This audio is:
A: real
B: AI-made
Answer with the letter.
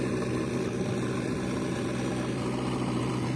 A